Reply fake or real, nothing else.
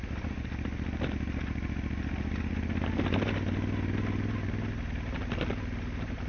real